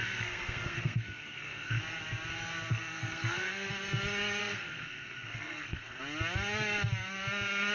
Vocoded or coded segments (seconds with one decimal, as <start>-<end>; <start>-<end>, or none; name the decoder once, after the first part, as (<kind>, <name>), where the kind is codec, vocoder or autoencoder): 0.0-1.8 (codec, SNAC); 2.7-3.7; 4.4-6.0